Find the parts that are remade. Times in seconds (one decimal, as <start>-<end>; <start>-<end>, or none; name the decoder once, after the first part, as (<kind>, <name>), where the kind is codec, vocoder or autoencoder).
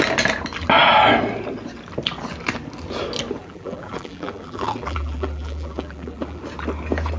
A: 3.4-6.4 (vocoder, BigVGAN v2)